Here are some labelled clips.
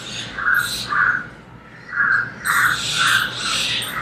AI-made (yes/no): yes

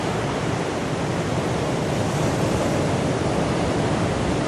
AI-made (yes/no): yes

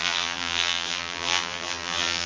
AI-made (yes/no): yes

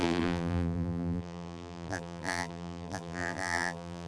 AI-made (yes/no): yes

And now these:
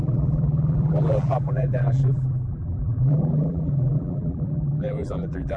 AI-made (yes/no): yes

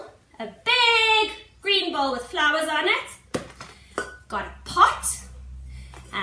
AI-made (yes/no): no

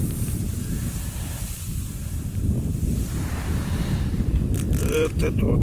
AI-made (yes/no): yes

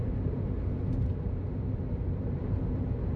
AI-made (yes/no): yes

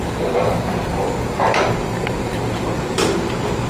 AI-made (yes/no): yes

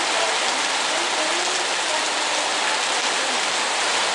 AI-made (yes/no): no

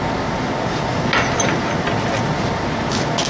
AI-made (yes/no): no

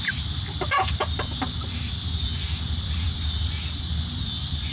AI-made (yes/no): yes